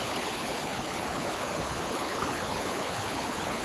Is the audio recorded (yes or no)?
no